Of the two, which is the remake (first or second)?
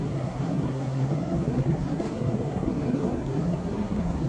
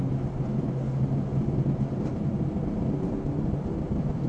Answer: first